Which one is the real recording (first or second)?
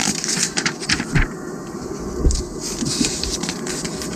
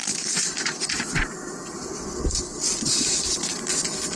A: first